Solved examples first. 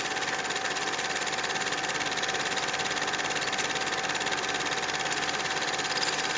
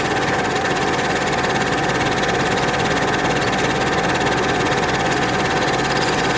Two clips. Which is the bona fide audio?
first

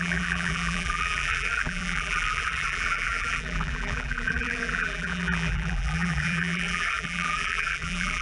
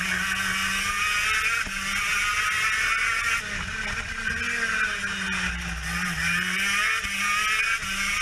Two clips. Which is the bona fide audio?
second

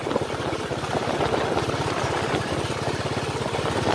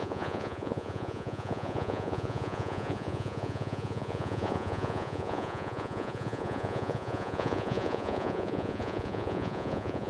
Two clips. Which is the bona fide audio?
first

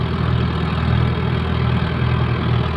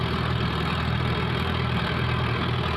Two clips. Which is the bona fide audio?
first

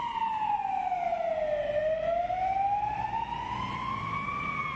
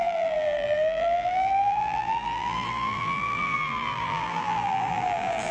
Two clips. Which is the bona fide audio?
first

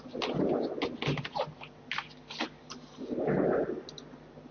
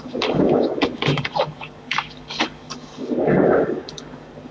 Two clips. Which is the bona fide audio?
first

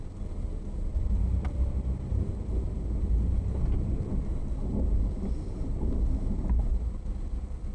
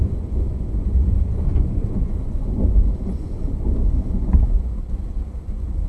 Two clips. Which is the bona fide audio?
first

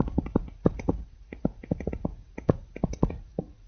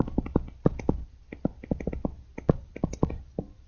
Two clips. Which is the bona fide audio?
second